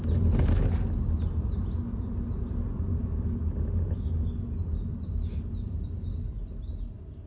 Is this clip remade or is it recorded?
recorded